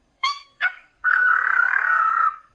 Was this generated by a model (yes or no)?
yes